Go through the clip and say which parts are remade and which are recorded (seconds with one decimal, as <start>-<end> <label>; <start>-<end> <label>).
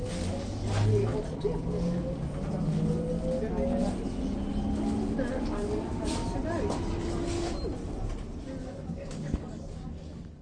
0.0-0.6 remade; 0.6-5.3 recorded; 5.3-6.2 remade; 6.2-8.6 recorded; 8.6-10.4 remade